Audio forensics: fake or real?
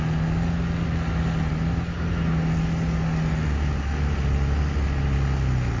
real